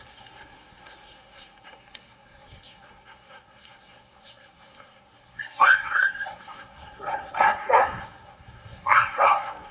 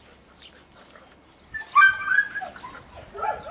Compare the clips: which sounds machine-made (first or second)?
first